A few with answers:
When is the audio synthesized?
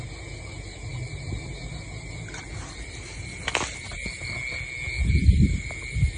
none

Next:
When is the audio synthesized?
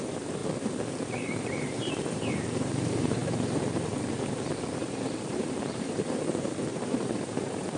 0.0-0.4 (vocoder, BigVGAN v2); 1.0-7.8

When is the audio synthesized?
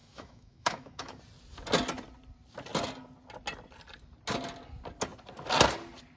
0.0-1.2 (autoencoder, DAC-VAE)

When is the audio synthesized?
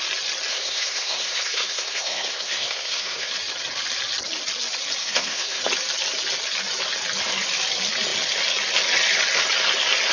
0.5-3.3 (codec, SNAC); 5.0-5.6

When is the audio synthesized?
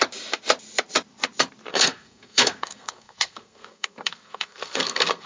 1.7-5.3 (codec, SNAC)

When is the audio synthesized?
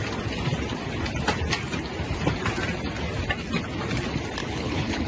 4.4-5.1 (codec, HILCodec)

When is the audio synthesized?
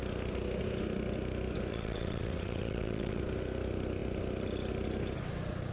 1.7-3.2 (vocoder, WaveNeXt)